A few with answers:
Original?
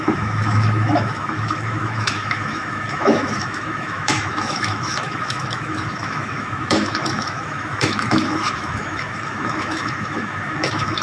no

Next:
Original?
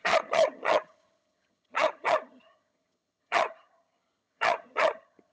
no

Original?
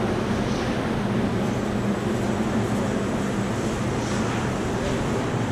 yes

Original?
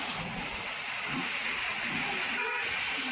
no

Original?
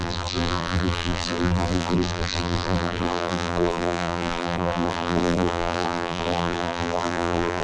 no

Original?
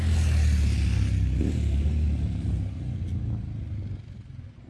yes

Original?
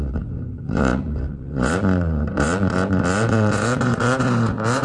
no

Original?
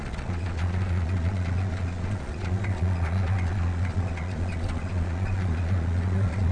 no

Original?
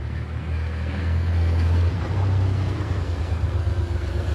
no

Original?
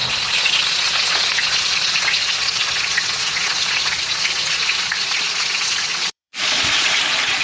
no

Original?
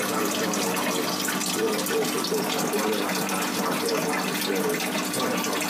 yes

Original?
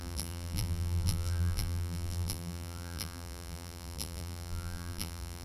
no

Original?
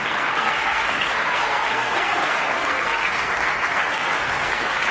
no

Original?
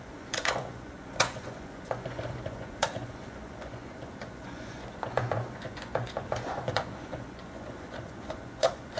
no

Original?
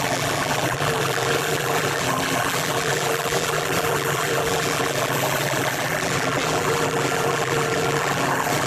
no